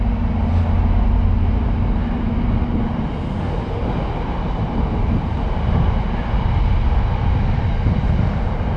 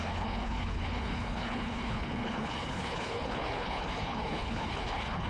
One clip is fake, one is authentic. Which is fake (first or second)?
second